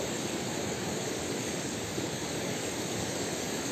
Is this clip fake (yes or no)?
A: yes